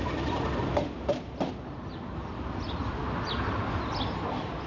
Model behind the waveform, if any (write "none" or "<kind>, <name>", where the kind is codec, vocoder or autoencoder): none